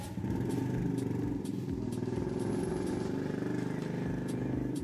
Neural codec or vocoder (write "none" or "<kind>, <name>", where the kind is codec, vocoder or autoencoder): none